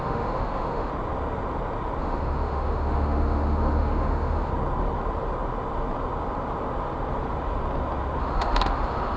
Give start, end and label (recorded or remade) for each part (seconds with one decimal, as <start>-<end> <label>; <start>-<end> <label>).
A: 0.0-0.9 remade; 0.9-2.0 recorded; 2.0-4.5 remade; 4.5-8.2 recorded; 8.2-9.2 remade